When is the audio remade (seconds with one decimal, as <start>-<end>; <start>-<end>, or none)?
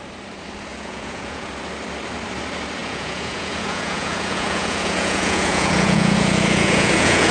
0.7-1.5; 2.8-7.3